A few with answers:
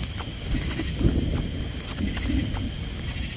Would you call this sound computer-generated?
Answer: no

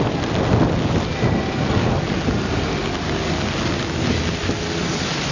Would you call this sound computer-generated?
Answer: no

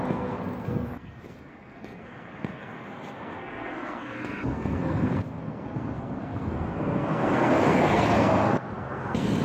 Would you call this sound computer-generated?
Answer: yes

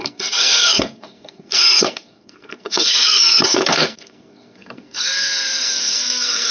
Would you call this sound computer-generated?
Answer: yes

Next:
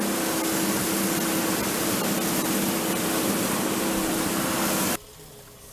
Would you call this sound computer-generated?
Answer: no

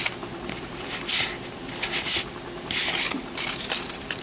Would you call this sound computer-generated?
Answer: yes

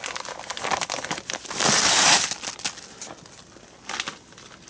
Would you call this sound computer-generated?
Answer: no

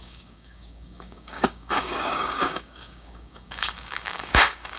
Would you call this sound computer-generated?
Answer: yes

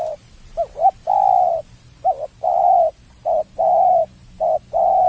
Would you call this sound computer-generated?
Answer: yes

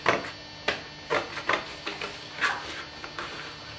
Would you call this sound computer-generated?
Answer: no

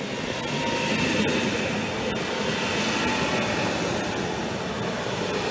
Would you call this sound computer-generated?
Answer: no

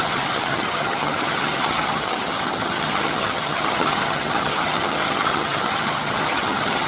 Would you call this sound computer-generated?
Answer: yes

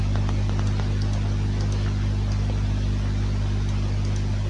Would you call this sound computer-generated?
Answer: no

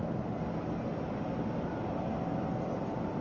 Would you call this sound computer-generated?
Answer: no